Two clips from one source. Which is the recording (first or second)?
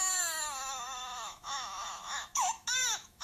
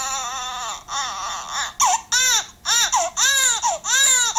second